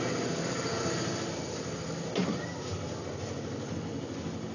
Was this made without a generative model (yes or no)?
yes